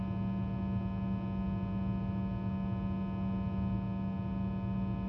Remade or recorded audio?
recorded